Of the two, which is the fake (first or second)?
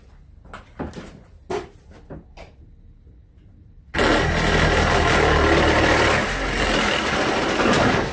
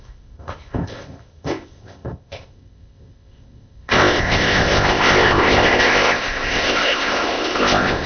second